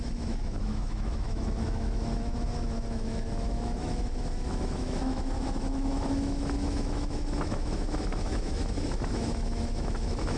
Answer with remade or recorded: remade